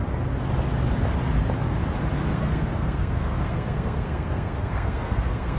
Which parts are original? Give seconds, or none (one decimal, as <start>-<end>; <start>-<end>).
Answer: 0.0-2.3